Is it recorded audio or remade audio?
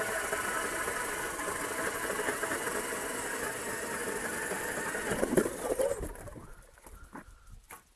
recorded